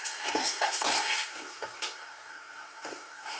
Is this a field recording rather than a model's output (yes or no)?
no